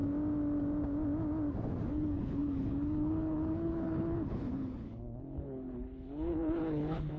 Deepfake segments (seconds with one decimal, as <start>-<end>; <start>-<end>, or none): 1.9-7.2